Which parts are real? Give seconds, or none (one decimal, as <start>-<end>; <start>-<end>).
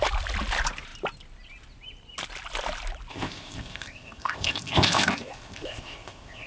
0.0-3.1